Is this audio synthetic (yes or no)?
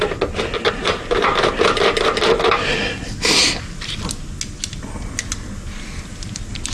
no